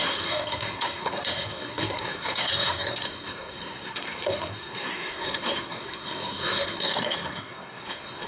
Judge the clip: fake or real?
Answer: fake